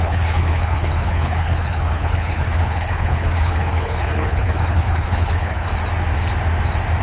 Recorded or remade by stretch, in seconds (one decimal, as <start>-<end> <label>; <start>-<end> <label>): 0.0-5.7 remade; 5.7-7.0 recorded